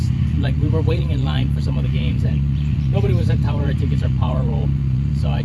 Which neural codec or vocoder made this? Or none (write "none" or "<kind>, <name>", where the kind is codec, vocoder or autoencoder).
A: vocoder, Vocos